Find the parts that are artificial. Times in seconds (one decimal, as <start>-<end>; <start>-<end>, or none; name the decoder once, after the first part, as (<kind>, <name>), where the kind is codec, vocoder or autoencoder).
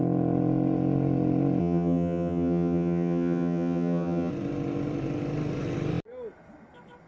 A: 1.6-4.3 (vocoder, HiFi-GAN)